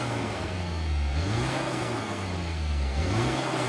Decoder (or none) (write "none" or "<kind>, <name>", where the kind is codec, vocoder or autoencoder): codec, SNAC